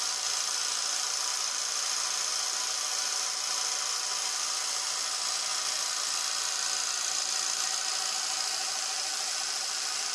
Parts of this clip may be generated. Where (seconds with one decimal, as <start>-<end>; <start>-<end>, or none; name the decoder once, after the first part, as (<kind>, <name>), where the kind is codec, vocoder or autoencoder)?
none